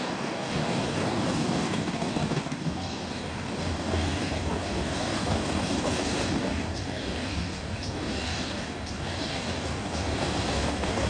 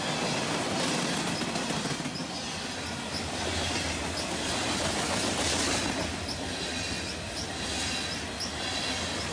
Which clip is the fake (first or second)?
first